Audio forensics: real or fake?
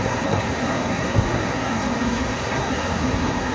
fake